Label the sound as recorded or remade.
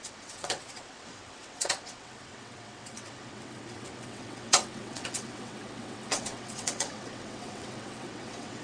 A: remade